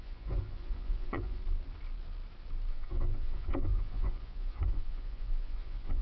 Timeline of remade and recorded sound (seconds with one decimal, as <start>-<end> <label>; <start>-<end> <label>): 0.0-1.4 remade; 1.4-2.7 recorded; 2.7-6.0 remade